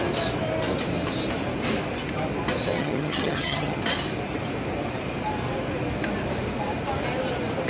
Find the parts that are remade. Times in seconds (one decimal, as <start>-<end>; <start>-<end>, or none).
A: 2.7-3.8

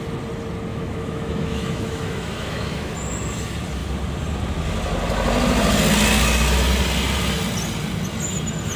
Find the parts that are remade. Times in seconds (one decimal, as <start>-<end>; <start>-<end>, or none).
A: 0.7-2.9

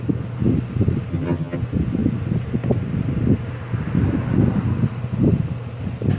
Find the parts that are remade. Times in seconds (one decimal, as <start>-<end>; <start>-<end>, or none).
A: 1.1-1.6

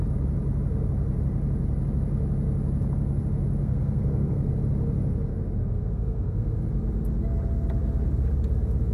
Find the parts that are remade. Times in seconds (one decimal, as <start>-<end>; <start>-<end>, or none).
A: 3.6-4.5; 5.3-6.7